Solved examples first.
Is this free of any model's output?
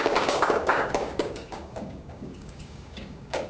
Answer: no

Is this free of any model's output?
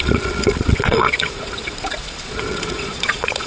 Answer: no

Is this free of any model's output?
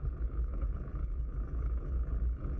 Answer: no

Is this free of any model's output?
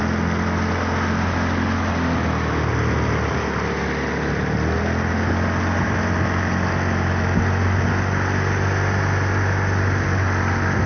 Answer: yes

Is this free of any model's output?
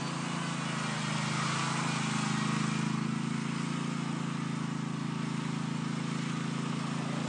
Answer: yes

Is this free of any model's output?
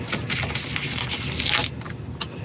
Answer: yes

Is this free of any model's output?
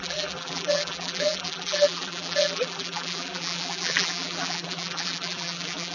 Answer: no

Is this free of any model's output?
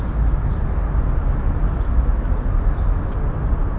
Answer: yes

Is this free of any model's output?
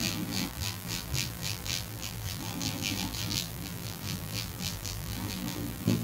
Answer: no